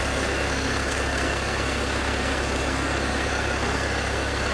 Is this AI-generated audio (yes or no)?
yes